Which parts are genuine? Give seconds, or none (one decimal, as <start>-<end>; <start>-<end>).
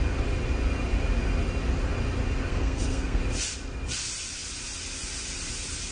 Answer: 0.0-2.5; 3.2-5.9